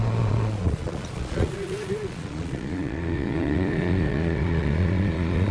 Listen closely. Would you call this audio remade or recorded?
remade